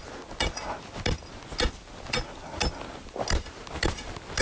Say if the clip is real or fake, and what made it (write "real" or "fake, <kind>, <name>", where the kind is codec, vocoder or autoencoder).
real